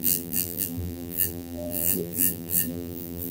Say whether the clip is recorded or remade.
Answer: remade